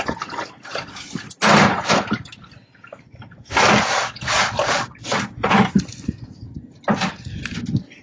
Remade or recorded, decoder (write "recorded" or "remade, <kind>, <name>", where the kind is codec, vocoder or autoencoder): recorded